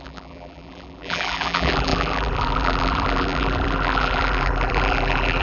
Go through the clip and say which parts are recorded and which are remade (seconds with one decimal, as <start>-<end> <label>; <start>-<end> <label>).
0.0-5.4 remade